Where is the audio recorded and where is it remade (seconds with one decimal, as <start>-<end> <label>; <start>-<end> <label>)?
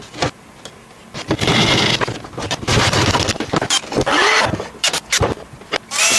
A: 0.0-6.2 recorded